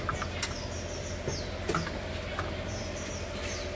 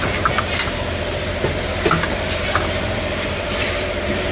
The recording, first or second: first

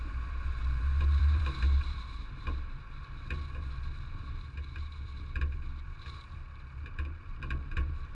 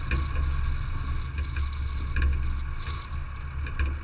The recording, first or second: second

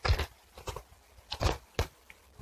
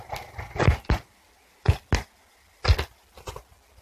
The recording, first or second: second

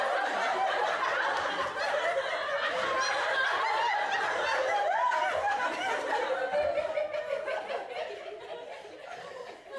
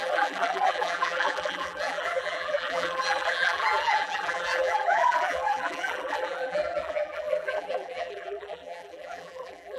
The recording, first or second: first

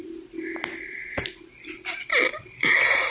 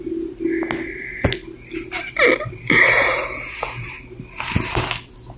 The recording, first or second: second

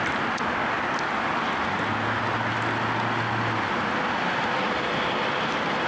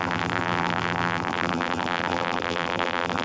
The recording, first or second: first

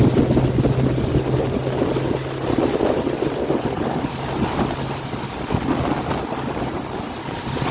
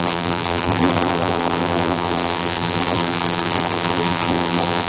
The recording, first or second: first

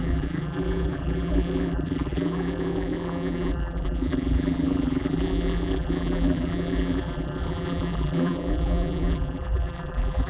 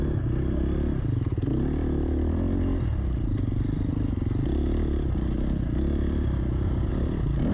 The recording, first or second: second